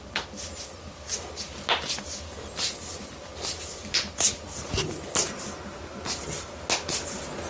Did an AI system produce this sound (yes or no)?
no